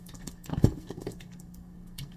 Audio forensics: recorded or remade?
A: remade